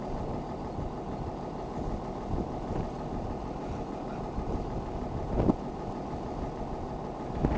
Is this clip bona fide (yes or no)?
yes